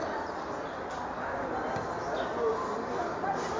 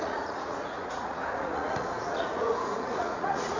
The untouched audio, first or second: first